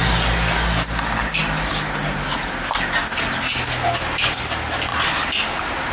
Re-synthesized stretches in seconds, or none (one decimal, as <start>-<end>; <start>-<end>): none